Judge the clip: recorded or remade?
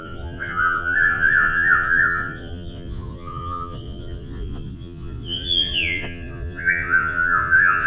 remade